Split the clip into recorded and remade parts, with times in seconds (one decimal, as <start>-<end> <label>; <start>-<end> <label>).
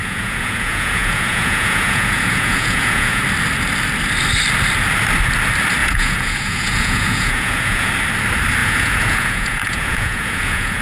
0.0-3.2 remade; 3.2-5.8 recorded; 5.8-7.9 remade; 7.9-8.6 recorded; 8.6-10.8 remade